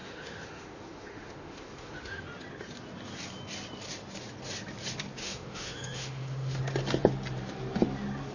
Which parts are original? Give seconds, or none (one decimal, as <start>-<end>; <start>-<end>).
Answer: 2.2-5.2; 6.6-8.3